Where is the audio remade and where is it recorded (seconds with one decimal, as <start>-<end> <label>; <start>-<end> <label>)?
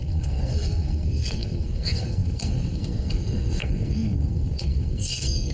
0.0-5.5 remade